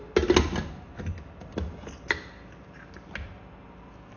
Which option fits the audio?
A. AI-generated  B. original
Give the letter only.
B